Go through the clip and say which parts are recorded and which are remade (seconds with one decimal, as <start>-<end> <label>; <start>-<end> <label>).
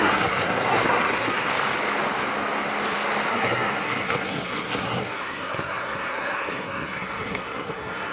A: 0.0-1.5 remade; 1.5-3.3 recorded; 3.3-8.1 remade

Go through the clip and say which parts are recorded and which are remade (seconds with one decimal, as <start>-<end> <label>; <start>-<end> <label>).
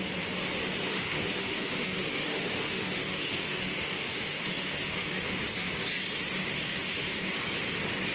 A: 0.0-0.9 recorded; 0.9-5.4 remade; 5.4-6.4 recorded; 6.4-7.1 remade; 7.1-8.1 recorded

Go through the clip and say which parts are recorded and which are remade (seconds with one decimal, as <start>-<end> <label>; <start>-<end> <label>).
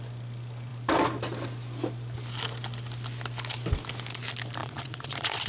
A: 0.0-4.6 recorded; 4.6-5.5 remade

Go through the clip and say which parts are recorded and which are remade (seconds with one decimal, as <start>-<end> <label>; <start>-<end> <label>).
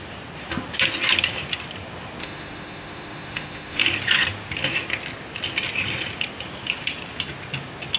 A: 0.0-2.2 recorded; 2.2-3.8 remade; 3.8-8.0 recorded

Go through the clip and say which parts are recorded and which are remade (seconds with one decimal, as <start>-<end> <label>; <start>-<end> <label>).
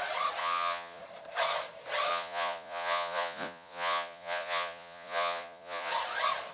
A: 0.0-0.4 recorded; 0.4-1.0 remade; 1.0-2.1 recorded; 2.1-5.9 remade; 5.9-6.5 recorded